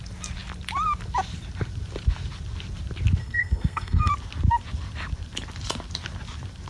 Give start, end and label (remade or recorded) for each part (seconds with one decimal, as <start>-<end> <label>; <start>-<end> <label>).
0.0-3.2 recorded; 3.2-4.1 remade; 4.1-6.7 recorded